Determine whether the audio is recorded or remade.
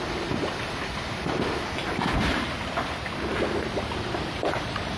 recorded